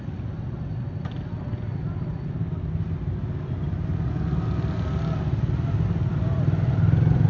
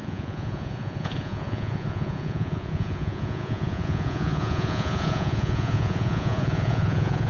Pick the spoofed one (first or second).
second